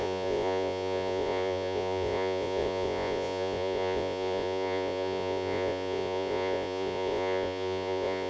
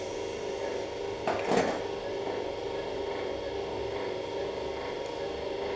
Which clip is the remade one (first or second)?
first